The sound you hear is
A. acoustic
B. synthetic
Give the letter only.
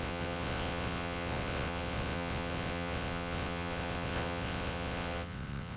B